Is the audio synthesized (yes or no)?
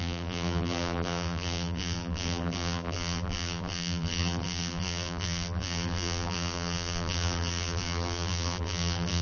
yes